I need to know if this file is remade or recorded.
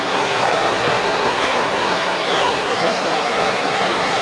remade